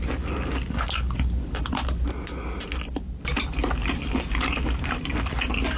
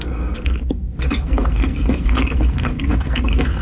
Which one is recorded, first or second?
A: first